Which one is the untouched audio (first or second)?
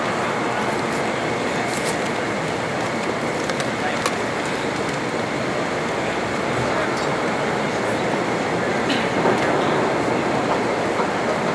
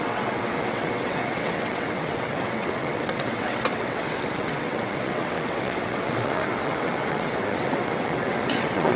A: first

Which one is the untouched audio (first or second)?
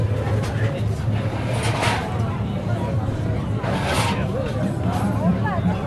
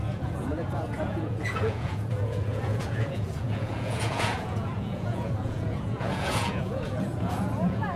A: first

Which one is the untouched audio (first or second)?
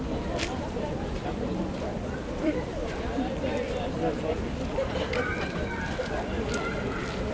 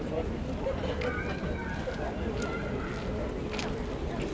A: second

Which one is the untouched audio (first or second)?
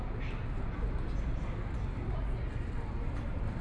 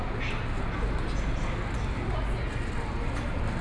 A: second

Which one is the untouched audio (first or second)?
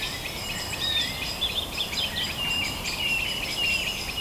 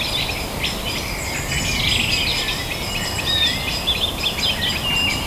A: second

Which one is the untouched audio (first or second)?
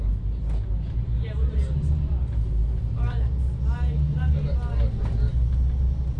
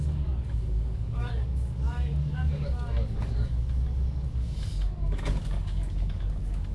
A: first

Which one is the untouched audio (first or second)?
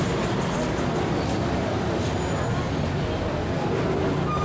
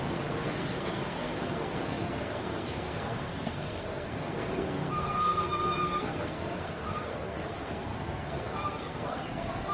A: first